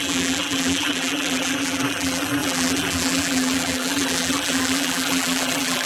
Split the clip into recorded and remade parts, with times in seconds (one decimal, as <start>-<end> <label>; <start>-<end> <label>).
0.0-5.9 remade